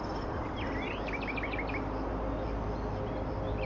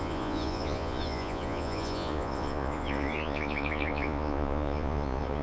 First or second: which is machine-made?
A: second